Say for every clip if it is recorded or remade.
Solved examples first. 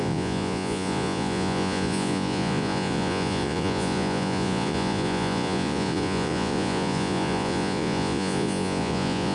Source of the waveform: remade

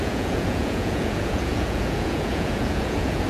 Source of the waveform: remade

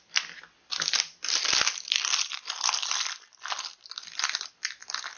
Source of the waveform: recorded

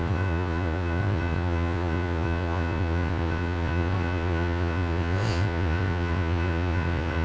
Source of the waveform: remade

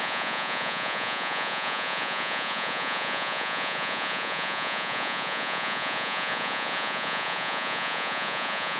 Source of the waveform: remade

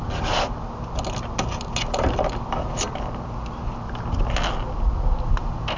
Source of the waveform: recorded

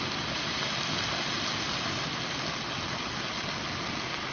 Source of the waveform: recorded